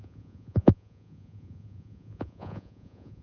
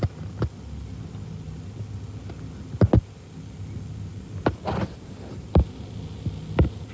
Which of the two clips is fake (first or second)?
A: first